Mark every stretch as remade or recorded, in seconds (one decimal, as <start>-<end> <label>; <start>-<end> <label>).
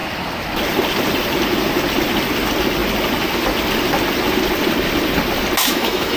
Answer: 0.0-5.6 recorded; 5.6-6.2 remade